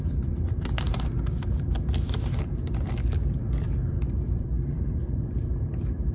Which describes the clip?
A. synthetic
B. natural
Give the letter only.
B